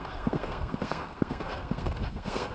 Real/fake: fake